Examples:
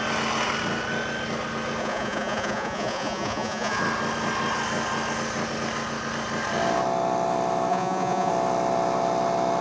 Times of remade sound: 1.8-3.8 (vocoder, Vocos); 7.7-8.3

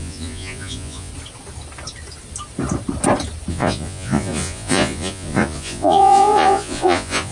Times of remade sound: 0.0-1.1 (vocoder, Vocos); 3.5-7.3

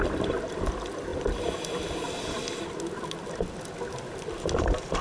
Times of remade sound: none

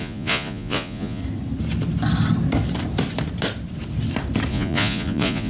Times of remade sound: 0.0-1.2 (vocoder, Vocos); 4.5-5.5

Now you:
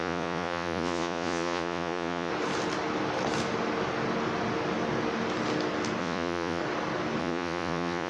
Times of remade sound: 0.0-2.3 (vocoder, Vocos); 6.0-6.6; 7.2-8.1

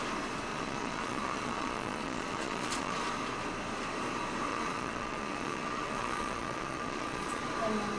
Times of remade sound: 0.5-3.0 (vocoder, Vocos); 4.5-7.4

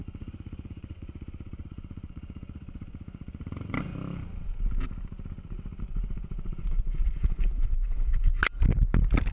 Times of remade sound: 0.0-3.9 (vocoder, Vocos); 5.8-8.4

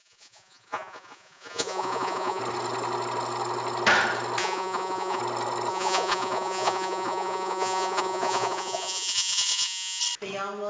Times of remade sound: 0.0-2.4 (vocoder, Vocos); 4.4-5.2; 5.7-10.0